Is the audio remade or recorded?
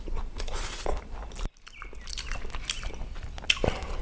recorded